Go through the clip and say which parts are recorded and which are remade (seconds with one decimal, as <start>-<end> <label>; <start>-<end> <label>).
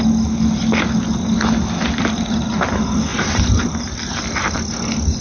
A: 0.0-3.1 recorded; 3.1-4.1 remade; 4.1-5.2 recorded